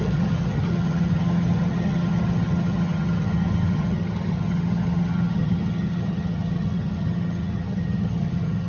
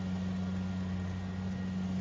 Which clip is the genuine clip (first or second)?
second